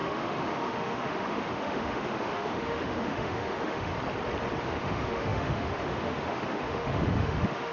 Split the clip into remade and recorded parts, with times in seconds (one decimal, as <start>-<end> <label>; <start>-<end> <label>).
0.0-3.9 remade; 3.9-4.6 recorded; 4.6-7.7 remade